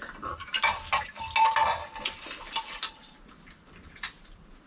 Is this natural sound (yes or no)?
yes